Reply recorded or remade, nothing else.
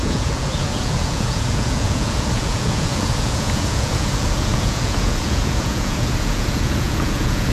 remade